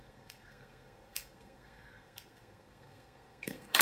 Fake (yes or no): yes